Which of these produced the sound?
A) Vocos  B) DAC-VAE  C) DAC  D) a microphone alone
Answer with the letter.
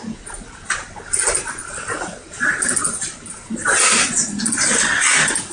D